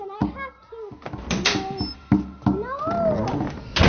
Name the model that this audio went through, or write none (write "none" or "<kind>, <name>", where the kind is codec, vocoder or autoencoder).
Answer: none